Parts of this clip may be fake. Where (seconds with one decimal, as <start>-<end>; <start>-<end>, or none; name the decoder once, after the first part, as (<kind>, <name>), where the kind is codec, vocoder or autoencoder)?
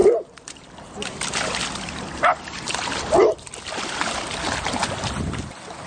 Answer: 0.0-3.5 (vocoder, BigVGAN v2)